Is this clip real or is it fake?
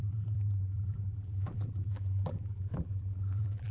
fake